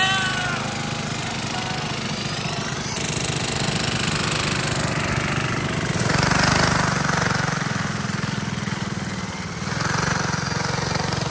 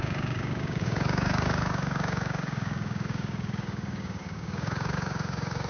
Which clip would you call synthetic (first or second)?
second